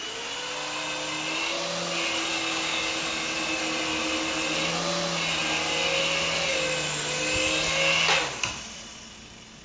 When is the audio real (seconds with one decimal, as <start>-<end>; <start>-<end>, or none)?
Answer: 0.0-2.3; 2.9-9.6